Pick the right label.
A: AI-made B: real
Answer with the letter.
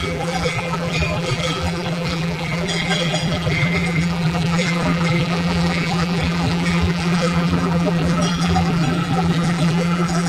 A